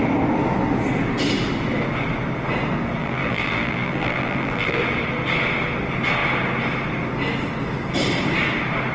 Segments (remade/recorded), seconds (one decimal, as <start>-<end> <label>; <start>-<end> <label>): 0.0-3.0 recorded; 3.0-4.8 remade; 4.8-8.9 recorded